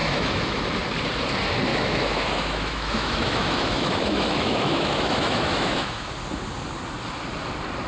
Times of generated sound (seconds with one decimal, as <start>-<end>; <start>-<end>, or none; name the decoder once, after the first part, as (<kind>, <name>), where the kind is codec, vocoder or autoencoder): 0.0-0.6 (autoencoder, DAC-VAE); 1.7-6.1